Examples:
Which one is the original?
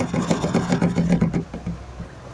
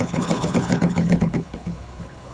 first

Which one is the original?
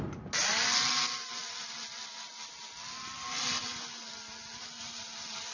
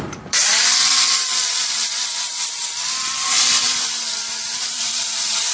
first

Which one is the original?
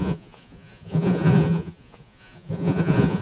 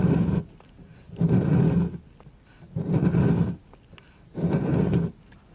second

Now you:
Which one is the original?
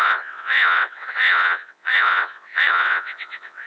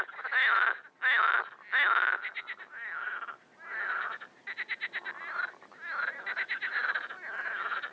second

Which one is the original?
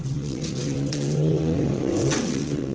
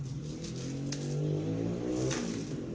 second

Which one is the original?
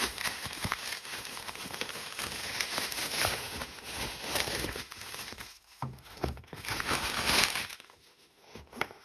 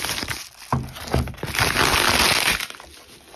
second